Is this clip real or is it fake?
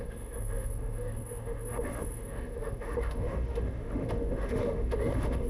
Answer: fake